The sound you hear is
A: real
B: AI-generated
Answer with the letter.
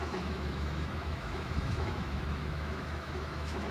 B